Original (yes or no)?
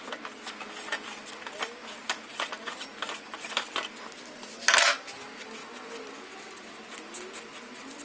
yes